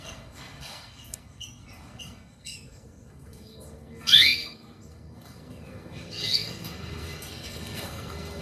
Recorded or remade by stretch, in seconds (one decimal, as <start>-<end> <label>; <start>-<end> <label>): 0.0-8.4 remade